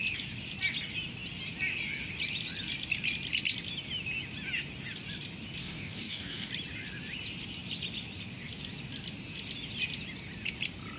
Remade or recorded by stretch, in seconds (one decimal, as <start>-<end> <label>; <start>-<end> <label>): 0.0-5.6 recorded; 5.6-6.5 remade; 6.5-11.0 recorded